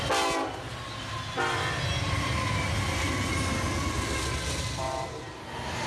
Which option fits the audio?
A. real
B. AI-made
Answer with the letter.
A